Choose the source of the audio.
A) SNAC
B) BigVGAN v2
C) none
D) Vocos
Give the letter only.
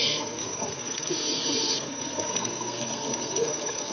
A